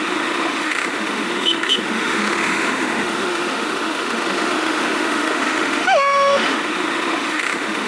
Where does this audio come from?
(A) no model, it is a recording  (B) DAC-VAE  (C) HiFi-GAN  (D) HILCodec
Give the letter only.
B